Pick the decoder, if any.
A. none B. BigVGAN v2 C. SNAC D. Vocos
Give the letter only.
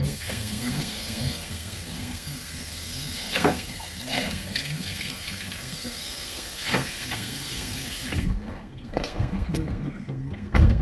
C